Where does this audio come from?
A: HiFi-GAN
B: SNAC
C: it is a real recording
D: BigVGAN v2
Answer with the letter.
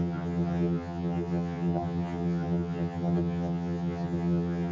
A